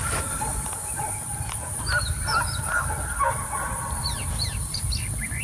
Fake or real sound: fake